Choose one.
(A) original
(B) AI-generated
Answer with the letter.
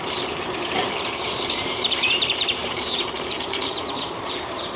B